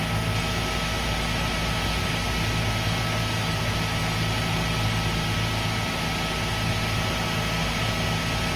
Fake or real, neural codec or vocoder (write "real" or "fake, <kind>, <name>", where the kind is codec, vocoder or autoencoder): real